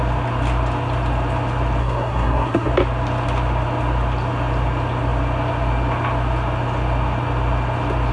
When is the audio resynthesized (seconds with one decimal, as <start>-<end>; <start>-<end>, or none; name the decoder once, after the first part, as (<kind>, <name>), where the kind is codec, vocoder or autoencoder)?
1.8-2.7 (codec, SNAC)